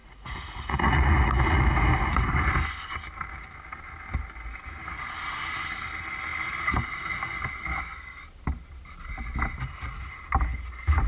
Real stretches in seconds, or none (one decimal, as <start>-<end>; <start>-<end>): 1.6-11.1